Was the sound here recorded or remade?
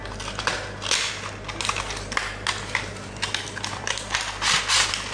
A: recorded